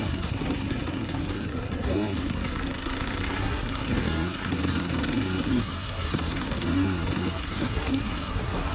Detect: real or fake fake